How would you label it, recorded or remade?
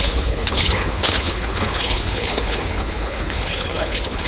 remade